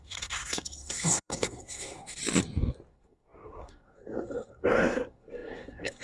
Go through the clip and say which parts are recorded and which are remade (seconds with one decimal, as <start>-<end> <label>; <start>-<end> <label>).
0.0-2.2 remade; 2.2-2.9 recorded; 2.9-6.0 remade